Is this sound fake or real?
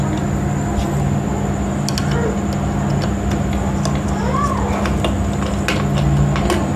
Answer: real